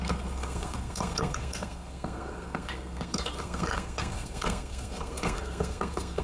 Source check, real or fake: fake